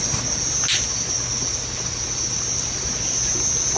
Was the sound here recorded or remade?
recorded